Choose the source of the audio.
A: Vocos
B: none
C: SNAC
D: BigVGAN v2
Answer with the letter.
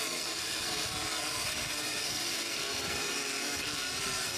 C